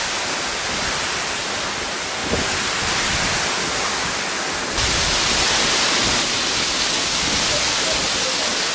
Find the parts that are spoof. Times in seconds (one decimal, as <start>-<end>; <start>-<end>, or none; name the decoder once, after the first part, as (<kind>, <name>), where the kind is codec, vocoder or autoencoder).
none